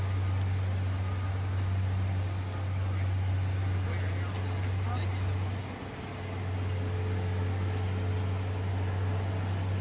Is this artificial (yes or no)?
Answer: no